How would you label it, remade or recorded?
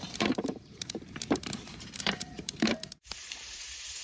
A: remade